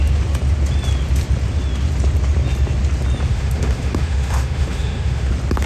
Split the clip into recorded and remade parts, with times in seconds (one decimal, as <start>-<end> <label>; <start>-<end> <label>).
0.0-3.3 recorded; 3.3-5.3 remade; 5.3-5.7 recorded